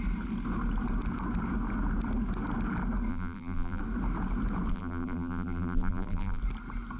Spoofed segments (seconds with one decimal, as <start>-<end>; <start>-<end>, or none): 3.1-3.8; 4.7-6.4